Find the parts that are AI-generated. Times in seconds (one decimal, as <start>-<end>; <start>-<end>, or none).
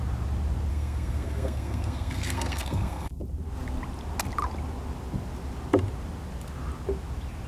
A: 0.7-3.1